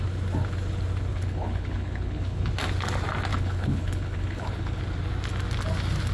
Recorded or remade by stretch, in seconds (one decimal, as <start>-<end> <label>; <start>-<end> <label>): 0.0-1.1 recorded; 1.1-2.5 remade; 2.5-3.3 recorded; 3.3-4.8 remade; 4.8-6.1 recorded